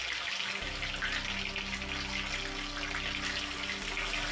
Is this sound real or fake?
real